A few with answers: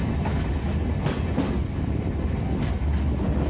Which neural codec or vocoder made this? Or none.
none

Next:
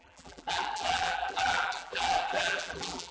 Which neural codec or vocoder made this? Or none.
vocoder, BigVGAN v2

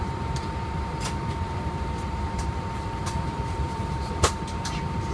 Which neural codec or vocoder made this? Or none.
vocoder, BigVGAN v2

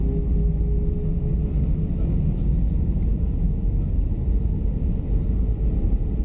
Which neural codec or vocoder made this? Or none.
none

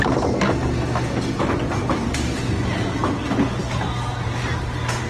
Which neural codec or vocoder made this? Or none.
none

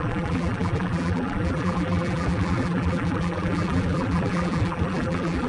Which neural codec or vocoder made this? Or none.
vocoder, BigVGAN v2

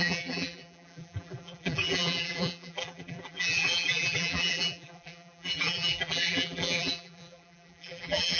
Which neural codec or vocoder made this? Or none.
vocoder, BigVGAN v2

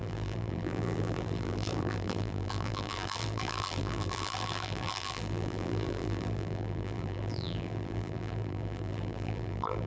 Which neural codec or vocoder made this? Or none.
vocoder, BigVGAN v2